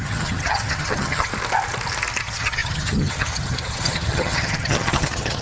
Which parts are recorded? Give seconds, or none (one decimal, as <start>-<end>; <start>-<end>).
1.3-2.2

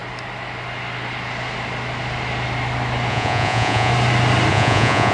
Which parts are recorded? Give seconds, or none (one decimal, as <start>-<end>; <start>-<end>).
0.0-3.1; 3.9-4.5

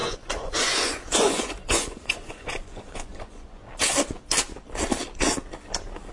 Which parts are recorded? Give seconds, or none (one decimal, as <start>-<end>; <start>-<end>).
3.7-6.1

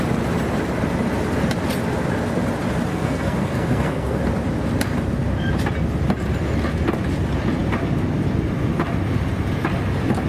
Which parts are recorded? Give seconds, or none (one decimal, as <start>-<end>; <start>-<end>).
0.0-2.9; 4.2-10.3

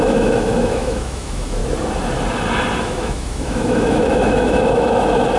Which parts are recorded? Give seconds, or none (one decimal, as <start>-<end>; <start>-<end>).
1.6-2.8

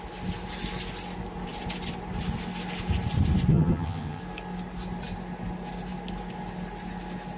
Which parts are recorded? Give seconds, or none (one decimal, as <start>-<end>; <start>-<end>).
0.0-3.5; 4.2-7.4